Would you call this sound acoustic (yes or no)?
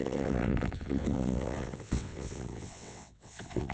no